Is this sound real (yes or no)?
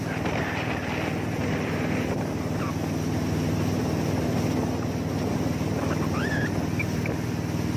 yes